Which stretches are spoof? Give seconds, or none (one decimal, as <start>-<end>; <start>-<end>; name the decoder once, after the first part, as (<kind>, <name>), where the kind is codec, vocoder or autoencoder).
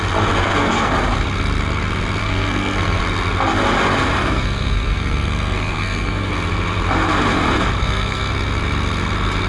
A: 0.4-0.9 (codec, SNAC); 2.2-3.0; 4.2-6.3; 7.8-8.3